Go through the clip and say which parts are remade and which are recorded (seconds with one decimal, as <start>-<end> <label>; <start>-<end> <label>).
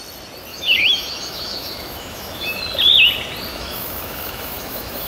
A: 0.0-0.5 recorded; 0.5-2.6 remade; 2.6-3.5 recorded; 3.5-5.1 remade